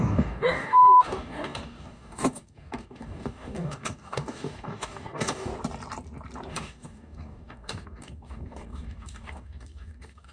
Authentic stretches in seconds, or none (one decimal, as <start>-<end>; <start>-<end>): 5.5-6.5